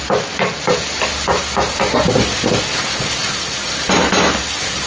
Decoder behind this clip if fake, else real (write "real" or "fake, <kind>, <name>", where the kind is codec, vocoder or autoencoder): real